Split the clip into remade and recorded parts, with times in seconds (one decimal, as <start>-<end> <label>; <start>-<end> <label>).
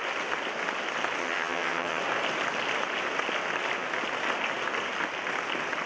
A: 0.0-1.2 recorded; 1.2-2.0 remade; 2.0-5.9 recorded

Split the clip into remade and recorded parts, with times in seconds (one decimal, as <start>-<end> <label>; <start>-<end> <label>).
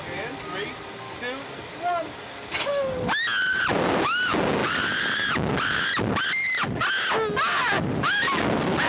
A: 0.0-8.9 recorded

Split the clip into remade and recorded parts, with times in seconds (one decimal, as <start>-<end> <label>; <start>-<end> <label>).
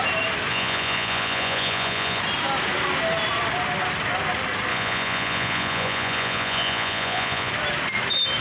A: 0.0-0.5 recorded; 0.5-2.2 remade; 2.2-4.7 recorded; 4.7-7.5 remade; 7.5-8.4 recorded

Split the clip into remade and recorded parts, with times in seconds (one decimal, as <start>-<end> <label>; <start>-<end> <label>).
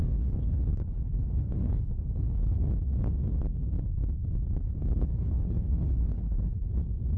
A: 0.0-2.7 remade; 2.7-4.6 recorded; 4.6-6.7 remade; 6.7-7.2 recorded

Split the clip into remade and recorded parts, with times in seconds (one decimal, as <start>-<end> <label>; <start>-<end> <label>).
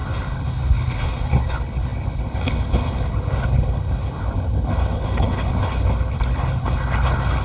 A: 0.0-7.4 remade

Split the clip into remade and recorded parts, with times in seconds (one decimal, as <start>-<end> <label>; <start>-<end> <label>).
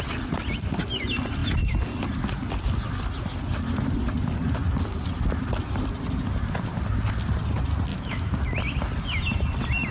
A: 0.0-7.9 recorded; 7.9-8.4 remade; 8.4-9.9 recorded